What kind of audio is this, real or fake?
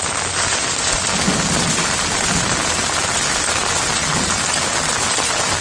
real